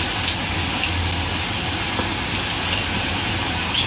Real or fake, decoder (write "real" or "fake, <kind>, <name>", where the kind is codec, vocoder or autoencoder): real